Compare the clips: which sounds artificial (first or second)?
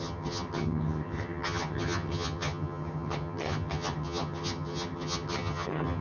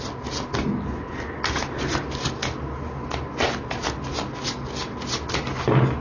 first